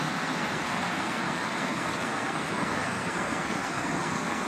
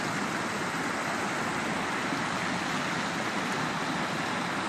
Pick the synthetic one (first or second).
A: first